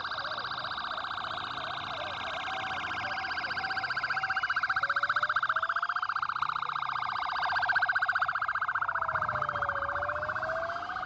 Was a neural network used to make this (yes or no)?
no